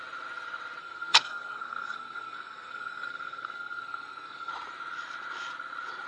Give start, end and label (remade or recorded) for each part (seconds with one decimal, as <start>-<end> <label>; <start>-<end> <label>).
0.0-0.8 recorded; 0.8-4.5 remade; 4.5-6.1 recorded